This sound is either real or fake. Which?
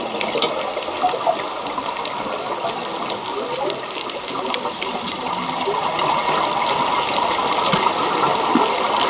real